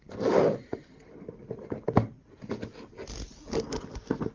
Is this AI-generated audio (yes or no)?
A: no